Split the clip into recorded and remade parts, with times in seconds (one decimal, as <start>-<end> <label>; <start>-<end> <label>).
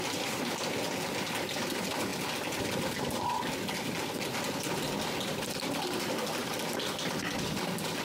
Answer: 0.0-8.0 recorded